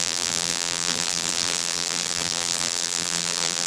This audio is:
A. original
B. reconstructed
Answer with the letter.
B